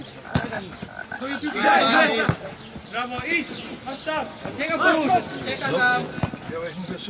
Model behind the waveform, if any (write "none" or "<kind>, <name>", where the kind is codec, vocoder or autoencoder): none